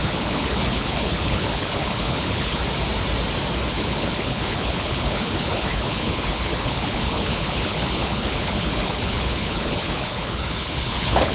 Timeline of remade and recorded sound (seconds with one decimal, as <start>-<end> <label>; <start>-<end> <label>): 0.0-2.6 remade; 2.6-3.7 recorded; 3.7-11.3 remade